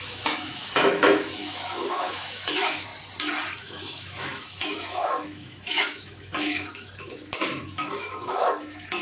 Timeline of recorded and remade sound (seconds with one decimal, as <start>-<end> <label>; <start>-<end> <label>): 0.0-2.9 remade; 2.9-3.6 recorded; 3.6-9.0 remade